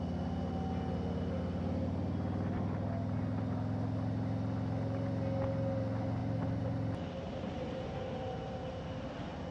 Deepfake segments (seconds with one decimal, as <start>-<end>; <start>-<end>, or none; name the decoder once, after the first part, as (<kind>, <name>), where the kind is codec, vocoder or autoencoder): 6.2-8.8 (vocoder, BigVGAN v2)

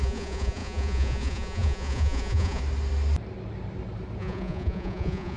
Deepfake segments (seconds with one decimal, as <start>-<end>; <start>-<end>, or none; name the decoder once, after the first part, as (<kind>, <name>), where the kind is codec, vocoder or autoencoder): 0.0-2.6 (vocoder, Vocos); 4.2-5.4

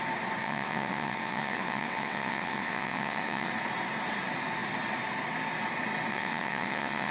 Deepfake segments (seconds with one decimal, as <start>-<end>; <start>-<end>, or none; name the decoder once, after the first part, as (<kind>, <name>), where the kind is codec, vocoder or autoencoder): 0.4-3.5 (vocoder, WaveNeXt); 6.1-7.1

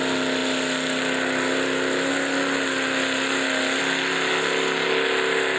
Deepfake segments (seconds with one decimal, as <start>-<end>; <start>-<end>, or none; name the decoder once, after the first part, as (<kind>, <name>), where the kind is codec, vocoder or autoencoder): none